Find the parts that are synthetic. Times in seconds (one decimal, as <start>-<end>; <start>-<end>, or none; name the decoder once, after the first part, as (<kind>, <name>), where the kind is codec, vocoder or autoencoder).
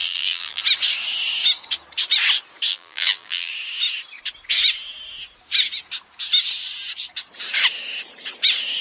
0.0-0.6 (vocoder, BigVGAN v2); 2.7-3.5